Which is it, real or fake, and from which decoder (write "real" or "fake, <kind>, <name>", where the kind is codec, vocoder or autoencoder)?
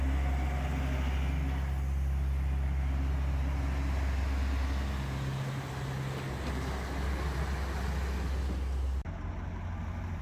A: real